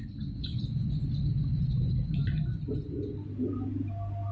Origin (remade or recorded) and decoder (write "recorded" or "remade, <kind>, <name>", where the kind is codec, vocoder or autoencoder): recorded